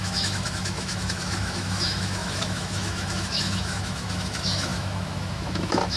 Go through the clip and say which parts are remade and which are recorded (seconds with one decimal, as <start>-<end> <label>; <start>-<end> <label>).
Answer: 0.0-6.0 remade